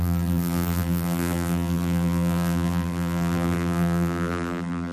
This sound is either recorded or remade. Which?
remade